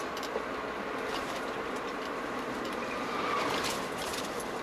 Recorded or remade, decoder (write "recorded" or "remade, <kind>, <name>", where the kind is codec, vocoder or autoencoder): remade, vocoder, BigVGAN v2